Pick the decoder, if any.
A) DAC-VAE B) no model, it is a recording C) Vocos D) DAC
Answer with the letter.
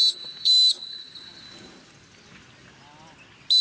B